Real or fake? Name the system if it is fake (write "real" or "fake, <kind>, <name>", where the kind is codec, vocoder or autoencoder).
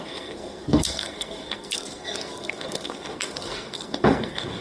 fake, codec, SNAC